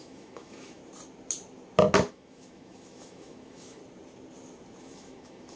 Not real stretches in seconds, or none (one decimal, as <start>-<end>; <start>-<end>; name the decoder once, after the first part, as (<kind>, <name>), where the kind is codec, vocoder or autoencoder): 0.0-0.8 (autoencoder, DAC-VAE); 2.1-3.8; 4.8-5.6